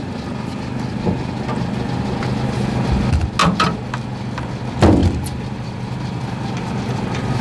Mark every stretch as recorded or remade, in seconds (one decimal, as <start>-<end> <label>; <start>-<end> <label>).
0.0-3.4 recorded; 3.4-3.9 remade; 3.9-5.0 recorded; 5.0-6.6 remade; 6.6-7.4 recorded